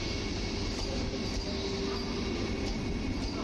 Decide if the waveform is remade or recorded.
recorded